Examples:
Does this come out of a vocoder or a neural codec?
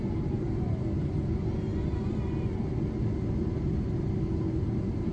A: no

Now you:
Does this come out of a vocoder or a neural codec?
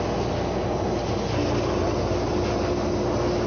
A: no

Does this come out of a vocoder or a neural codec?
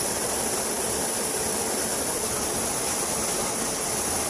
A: no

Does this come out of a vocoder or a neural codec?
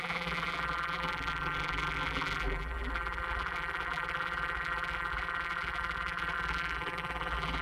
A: yes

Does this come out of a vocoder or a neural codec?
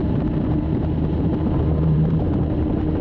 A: yes